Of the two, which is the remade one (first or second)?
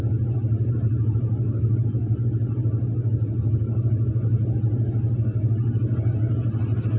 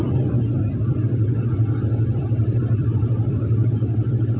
second